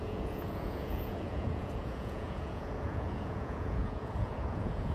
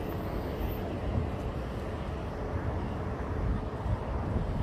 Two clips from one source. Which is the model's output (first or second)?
first